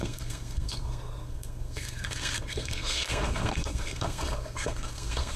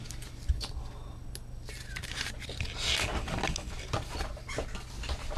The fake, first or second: first